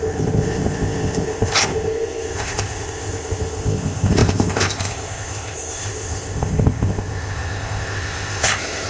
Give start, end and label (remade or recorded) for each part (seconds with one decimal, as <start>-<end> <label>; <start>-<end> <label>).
0.0-8.9 remade